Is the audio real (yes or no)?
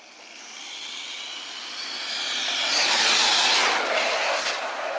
yes